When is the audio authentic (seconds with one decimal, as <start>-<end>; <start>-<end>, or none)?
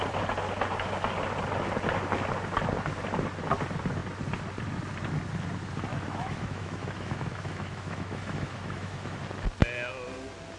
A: 0.0-5.9; 9.2-10.6